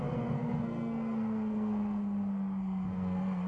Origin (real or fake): fake